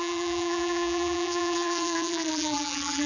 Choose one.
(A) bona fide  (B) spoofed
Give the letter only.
B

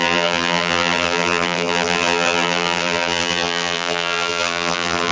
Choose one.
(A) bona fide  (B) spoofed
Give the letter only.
B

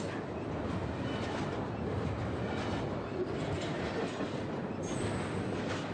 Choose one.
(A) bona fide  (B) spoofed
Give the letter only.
A